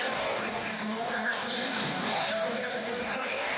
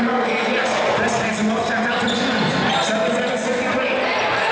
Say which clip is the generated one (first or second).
first